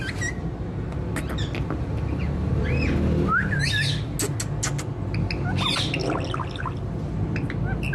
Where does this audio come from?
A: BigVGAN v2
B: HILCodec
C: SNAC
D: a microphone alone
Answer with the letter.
D